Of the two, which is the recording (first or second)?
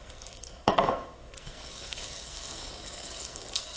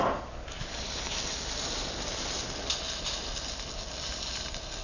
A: second